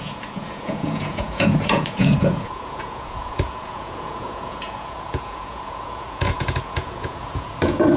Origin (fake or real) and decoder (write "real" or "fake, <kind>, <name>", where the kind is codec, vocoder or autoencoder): fake, vocoder, Vocos